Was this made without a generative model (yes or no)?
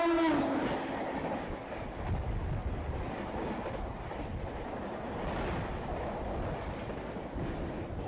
yes